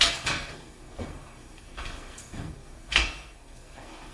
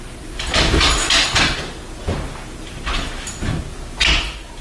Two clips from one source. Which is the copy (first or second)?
first